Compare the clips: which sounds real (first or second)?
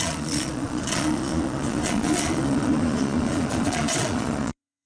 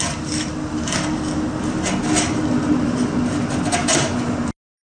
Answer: second